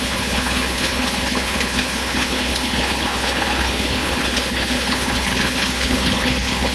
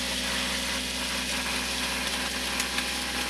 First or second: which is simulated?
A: first